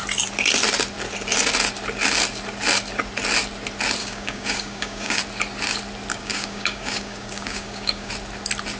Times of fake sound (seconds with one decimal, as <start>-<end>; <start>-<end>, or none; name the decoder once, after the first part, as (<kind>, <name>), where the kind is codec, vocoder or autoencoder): 4.0-5.2 (codec, DAC); 6.1-8.1